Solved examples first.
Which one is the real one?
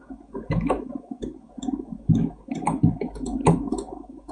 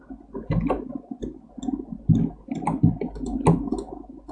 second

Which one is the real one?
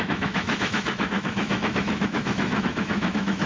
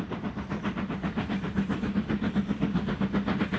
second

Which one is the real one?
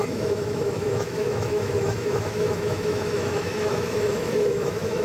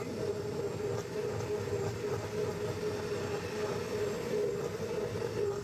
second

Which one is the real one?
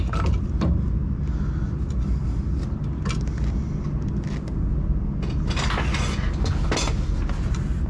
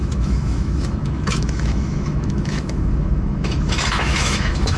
first